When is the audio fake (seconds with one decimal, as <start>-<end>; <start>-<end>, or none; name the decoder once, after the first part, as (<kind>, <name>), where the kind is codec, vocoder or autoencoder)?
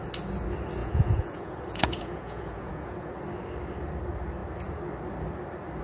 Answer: 0.8-3.1 (vocoder, Vocos)